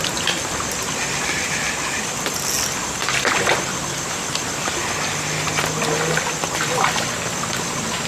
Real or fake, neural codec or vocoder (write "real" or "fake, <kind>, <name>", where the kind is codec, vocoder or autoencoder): real